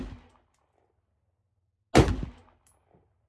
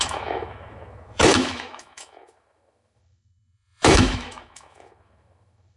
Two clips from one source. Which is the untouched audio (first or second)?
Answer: first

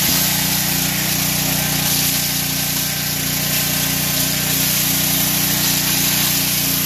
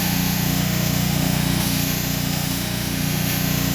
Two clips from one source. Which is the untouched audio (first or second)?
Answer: first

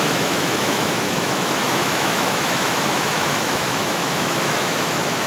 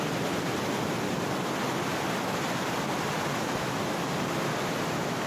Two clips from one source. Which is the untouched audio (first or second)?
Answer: second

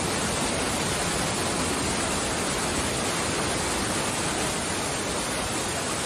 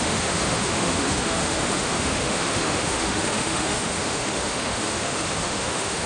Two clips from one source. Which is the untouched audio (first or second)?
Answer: first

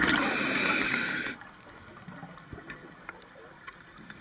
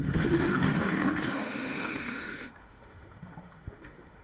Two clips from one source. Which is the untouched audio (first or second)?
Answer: first